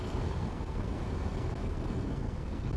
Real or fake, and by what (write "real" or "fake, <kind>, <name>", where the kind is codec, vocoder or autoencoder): fake, codec, SNAC